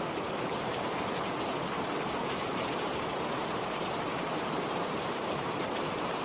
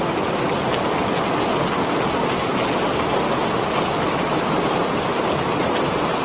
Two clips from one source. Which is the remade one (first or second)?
first